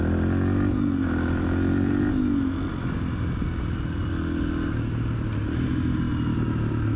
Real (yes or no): yes